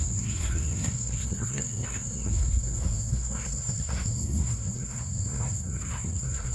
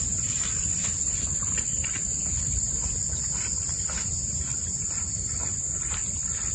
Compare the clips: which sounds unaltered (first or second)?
second